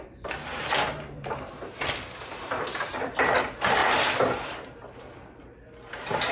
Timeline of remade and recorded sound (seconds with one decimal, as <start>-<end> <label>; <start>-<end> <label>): 0.0-0.5 recorded; 0.5-2.9 remade; 2.9-6.3 recorded